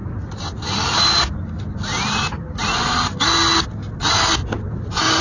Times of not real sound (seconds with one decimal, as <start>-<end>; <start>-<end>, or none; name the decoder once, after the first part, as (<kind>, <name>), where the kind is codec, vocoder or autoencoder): none